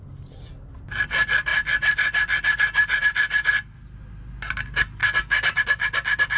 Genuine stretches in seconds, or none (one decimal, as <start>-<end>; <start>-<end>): 0.0-5.0; 5.6-6.4